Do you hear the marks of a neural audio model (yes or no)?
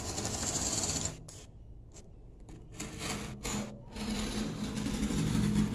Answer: no